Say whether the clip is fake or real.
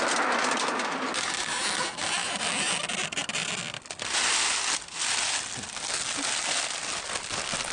real